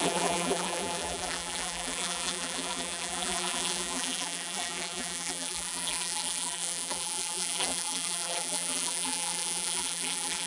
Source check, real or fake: fake